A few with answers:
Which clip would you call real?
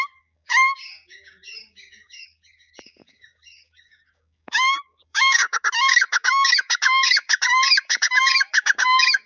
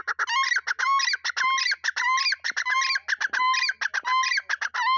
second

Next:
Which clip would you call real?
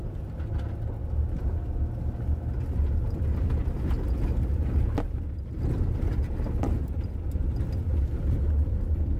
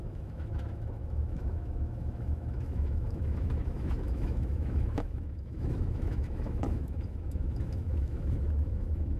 first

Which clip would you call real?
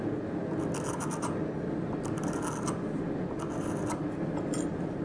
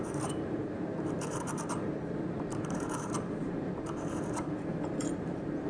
first